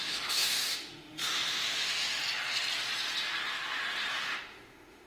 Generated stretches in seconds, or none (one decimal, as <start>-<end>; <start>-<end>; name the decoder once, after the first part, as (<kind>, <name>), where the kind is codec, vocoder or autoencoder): 0.0-2.2 (autoencoder, DAC-VAE); 4.1-5.1